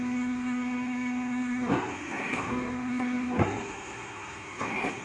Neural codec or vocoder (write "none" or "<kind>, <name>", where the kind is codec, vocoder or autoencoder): codec, SNAC